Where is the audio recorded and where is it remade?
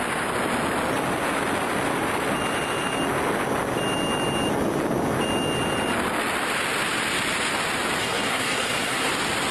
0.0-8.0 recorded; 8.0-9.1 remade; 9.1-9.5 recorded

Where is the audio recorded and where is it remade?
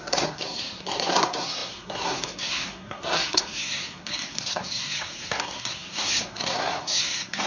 0.0-7.5 remade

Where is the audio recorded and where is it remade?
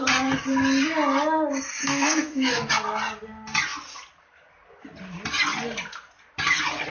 0.0-1.8 recorded; 1.8-2.7 remade; 2.7-6.9 recorded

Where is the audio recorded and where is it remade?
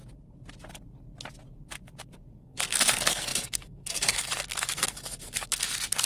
0.0-2.4 recorded; 2.4-6.1 remade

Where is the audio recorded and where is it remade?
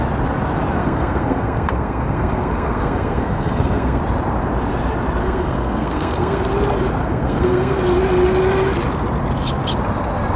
0.0-0.8 recorded; 0.8-4.0 remade; 4.0-5.2 recorded; 5.2-6.4 remade; 6.4-7.0 recorded; 7.0-7.8 remade; 7.8-10.4 recorded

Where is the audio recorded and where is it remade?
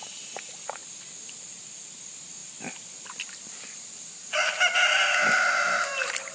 0.0-6.3 recorded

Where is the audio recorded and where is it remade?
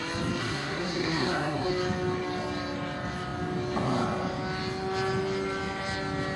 0.0-0.4 recorded; 0.4-1.7 remade; 1.7-6.4 recorded